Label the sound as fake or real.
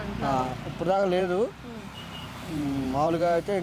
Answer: fake